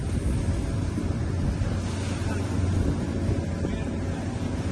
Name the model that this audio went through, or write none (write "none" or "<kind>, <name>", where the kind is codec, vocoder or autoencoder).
none